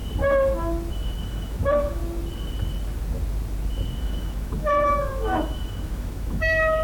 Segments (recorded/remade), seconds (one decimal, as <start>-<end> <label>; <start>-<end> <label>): 0.0-0.9 recorded; 0.9-2.0 remade; 2.0-4.0 recorded; 4.0-6.8 remade